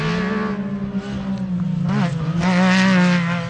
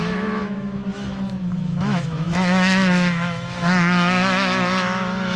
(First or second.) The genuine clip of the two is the first